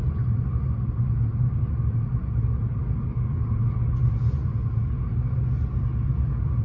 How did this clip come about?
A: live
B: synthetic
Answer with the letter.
A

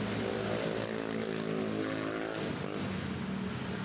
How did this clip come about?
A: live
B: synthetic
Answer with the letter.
A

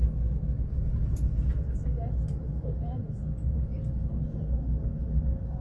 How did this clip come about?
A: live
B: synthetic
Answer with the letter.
A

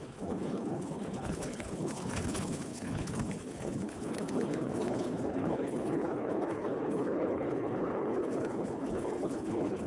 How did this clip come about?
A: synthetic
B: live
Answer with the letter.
A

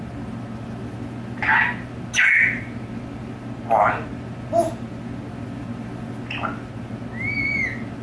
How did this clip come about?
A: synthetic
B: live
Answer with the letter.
B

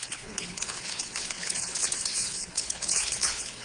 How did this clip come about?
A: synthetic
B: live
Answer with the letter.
A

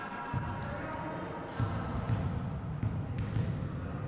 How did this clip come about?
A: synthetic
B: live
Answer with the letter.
B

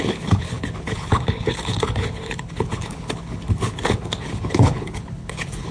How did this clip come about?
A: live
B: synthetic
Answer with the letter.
B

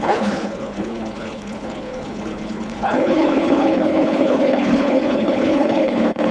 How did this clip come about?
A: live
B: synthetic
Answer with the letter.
B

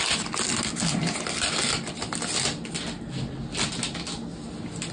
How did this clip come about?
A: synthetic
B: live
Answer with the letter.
B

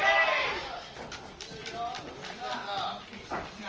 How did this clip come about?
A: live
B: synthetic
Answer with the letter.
A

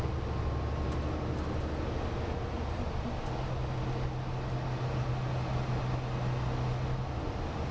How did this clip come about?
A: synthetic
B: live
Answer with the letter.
B